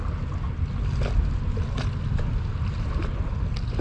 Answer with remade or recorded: recorded